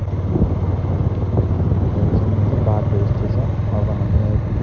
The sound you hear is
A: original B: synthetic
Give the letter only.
A